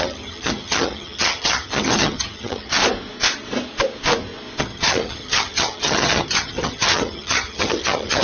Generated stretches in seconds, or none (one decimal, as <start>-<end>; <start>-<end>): 0.0-2.8; 4.6-8.2